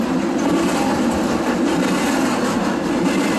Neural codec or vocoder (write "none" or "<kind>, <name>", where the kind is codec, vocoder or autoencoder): none